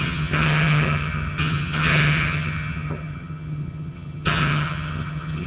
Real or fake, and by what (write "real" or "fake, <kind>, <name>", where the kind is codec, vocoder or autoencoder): fake, vocoder, HiFi-GAN